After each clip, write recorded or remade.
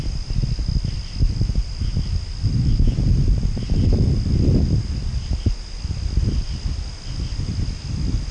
recorded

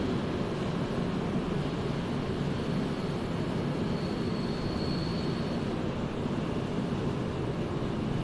recorded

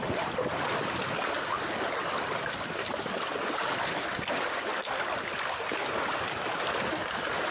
recorded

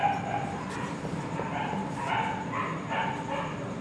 recorded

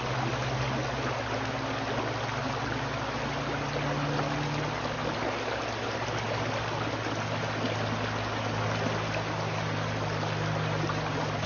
recorded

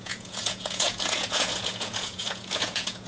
remade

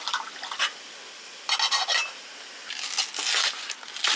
recorded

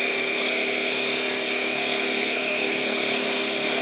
remade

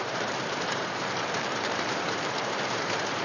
remade